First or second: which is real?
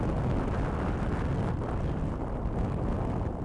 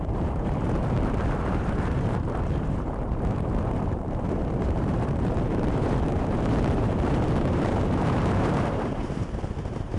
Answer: first